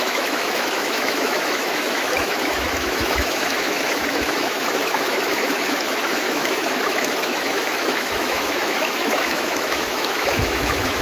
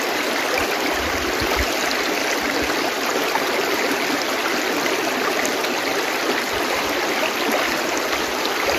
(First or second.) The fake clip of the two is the first